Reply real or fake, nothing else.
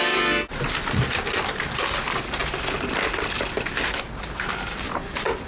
real